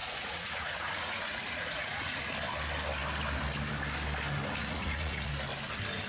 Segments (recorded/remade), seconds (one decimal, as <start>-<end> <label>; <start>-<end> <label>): 0.0-2.2 remade; 2.2-4.6 recorded; 4.6-5.3 remade; 5.3-6.1 recorded